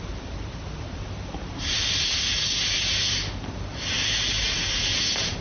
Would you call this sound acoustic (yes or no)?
yes